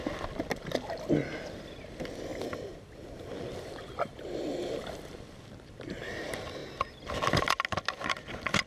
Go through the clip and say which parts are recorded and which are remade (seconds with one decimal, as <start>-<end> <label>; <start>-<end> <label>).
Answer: 0.0-2.3 recorded; 2.3-5.9 remade; 5.9-8.7 recorded